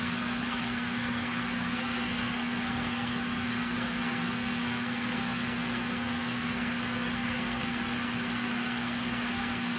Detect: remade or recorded remade